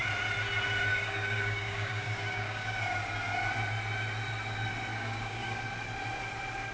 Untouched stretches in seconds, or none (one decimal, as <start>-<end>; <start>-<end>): 0.0-0.9; 2.8-4.9; 5.6-6.7